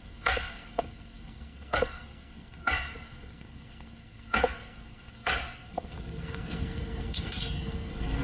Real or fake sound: fake